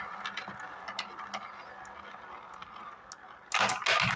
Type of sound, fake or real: real